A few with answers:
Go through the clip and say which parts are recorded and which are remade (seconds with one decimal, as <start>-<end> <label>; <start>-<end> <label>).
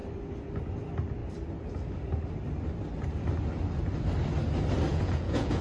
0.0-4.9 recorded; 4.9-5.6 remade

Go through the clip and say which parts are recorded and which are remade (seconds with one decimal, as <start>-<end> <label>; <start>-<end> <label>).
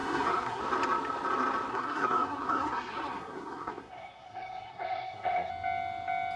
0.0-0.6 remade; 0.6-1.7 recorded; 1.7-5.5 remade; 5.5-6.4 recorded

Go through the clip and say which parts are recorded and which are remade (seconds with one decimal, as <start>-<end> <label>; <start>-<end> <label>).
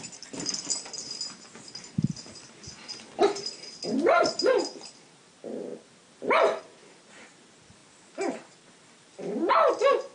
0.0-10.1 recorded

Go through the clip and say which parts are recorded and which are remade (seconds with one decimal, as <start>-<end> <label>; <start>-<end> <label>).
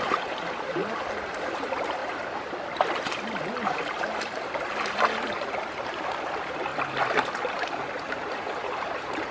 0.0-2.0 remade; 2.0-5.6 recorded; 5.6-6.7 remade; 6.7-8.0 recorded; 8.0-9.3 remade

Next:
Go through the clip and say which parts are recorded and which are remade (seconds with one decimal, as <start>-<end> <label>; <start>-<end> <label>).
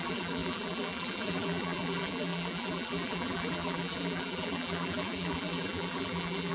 0.0-6.5 remade